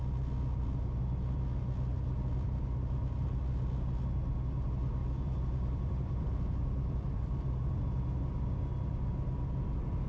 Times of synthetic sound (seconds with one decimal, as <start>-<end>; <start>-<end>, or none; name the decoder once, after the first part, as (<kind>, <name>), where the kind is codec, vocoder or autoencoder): 5.0-7.8 (vocoder, BigVGAN v2)